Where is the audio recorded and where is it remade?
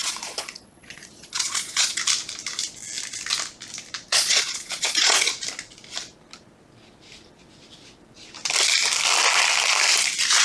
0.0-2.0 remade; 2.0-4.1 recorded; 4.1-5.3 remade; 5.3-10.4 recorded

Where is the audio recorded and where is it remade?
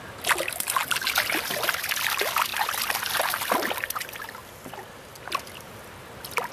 0.0-6.5 recorded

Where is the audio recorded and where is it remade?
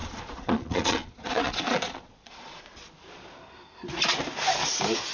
0.0-2.6 remade; 2.6-5.1 recorded